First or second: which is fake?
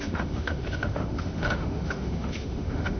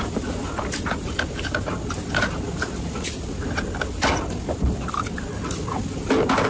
first